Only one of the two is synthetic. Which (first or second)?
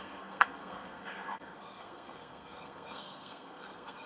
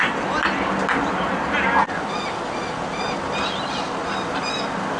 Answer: first